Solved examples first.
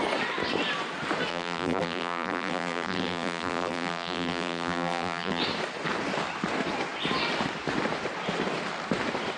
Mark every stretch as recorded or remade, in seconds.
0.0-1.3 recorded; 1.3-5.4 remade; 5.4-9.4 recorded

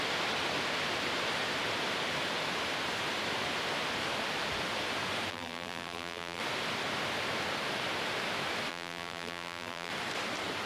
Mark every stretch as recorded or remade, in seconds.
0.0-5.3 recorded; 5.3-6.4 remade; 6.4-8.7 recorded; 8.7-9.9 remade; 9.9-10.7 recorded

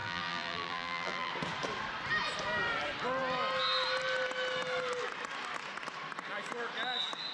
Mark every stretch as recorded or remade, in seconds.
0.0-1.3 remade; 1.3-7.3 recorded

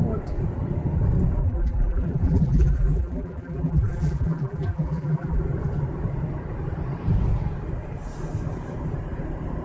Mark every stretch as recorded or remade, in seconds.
0.0-1.4 recorded; 1.4-5.4 remade; 5.4-9.6 recorded

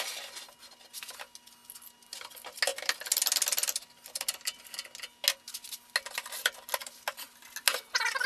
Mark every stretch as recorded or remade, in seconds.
0.0-8.3 recorded

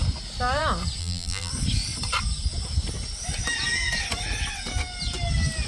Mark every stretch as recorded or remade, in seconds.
0.0-1.0 recorded; 1.0-1.5 remade; 1.5-5.7 recorded